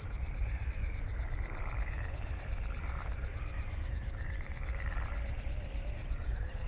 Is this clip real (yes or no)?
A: no